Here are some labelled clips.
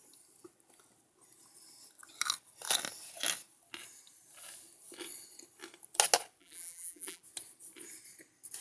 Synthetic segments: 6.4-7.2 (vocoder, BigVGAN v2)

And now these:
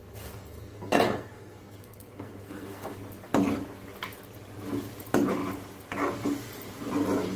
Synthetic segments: 0.0-3.3 (codec, SNAC)

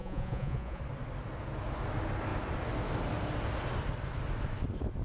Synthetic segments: 0.0-0.8 (vocoder, Vocos)

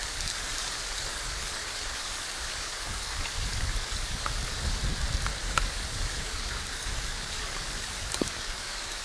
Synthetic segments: 0.0-4.8 (codec, DAC); 5.4-9.0

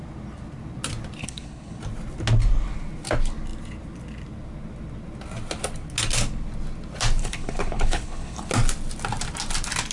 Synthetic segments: 1.2-1.8 (codec, HILCodec); 7.2-8.5

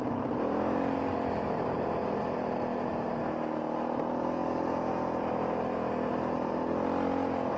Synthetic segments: none

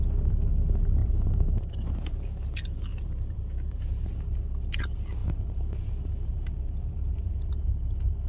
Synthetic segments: 1.0-2.3 (vocoder, BigVGAN v2); 2.9-3.8; 5.2-7.4

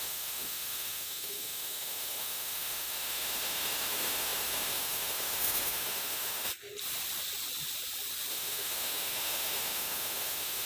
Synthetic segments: 0.0-6.5 (autoencoder, DAC-VAE); 8.3-10.7